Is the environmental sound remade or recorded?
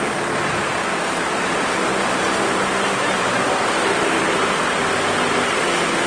recorded